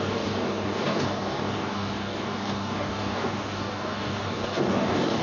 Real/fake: fake